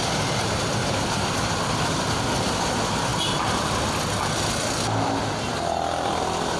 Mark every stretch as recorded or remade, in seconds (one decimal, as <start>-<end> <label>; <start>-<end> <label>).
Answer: 0.0-6.6 recorded